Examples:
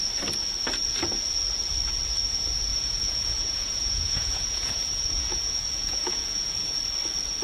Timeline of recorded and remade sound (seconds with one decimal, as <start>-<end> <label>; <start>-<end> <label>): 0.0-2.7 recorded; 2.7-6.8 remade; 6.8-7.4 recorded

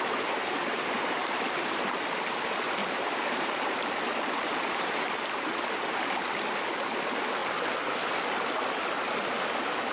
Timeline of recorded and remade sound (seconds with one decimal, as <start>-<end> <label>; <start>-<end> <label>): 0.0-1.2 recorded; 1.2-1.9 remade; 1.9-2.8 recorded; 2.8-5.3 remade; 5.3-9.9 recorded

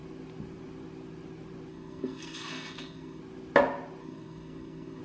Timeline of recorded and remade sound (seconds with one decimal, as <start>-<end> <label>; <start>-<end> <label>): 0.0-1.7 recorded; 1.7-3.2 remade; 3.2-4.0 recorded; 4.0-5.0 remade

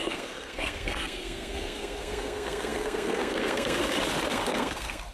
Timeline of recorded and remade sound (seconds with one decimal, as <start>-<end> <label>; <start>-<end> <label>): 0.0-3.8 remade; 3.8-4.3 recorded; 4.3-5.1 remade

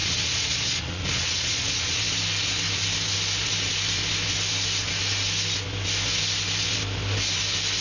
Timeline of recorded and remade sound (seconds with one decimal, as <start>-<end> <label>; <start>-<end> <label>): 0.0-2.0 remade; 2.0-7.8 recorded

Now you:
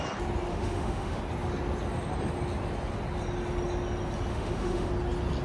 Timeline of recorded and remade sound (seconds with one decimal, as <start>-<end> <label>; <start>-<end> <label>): 0.0-0.5 recorded; 0.5-1.2 remade; 1.2-4.3 recorded; 4.3-4.9 remade; 4.9-5.4 recorded